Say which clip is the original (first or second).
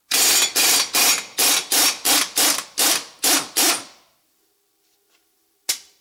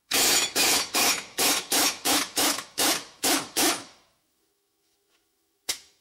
first